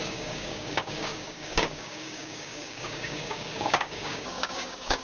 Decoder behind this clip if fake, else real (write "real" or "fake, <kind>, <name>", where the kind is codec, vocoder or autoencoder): fake, codec, DAC